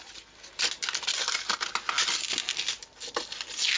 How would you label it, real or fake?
real